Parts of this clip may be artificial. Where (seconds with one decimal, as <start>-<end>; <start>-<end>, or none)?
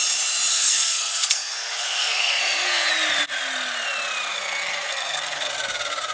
0.5-2.9; 4.3-5.5